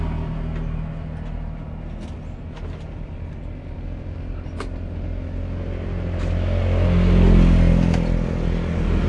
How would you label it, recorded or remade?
recorded